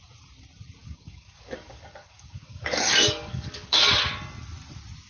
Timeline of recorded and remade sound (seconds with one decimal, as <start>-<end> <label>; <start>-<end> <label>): 0.0-0.8 recorded; 0.8-3.9 remade; 3.9-5.1 recorded